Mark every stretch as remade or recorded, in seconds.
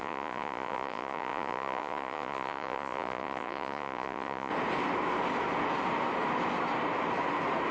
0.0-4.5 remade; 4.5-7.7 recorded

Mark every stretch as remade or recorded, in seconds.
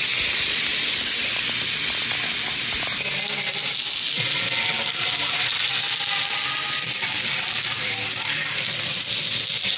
0.0-9.8 recorded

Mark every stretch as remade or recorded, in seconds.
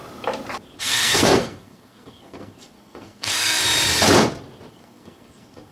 0.0-0.8 recorded; 0.8-3.6 remade; 3.6-4.7 recorded; 4.7-5.7 remade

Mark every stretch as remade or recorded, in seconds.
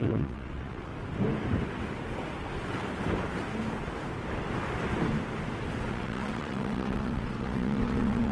0.0-0.9 remade; 0.9-5.9 recorded; 5.9-8.3 remade